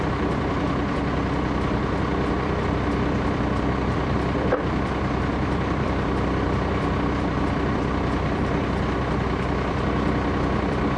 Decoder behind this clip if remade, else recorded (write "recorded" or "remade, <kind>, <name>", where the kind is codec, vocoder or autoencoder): remade, vocoder, BigVGAN v2